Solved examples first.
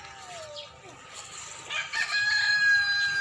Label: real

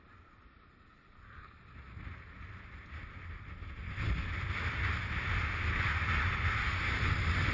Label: real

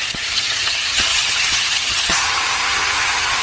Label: fake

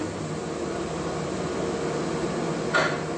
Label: real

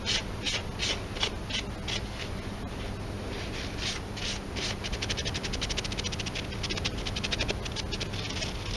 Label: real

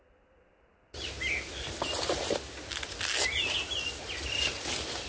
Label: real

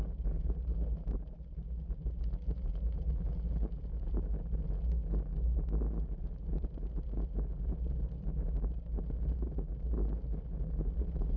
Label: real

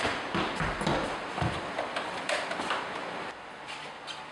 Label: real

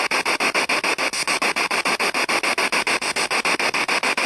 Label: real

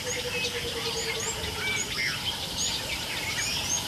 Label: real